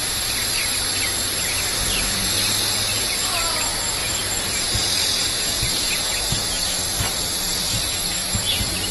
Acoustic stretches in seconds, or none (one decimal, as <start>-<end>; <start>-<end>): 0.0-2.9; 3.4-4.0; 6.6-8.9